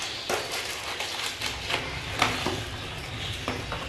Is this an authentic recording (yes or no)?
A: yes